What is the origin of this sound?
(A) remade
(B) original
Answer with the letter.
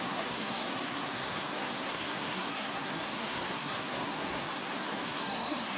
A